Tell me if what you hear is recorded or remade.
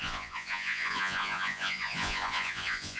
remade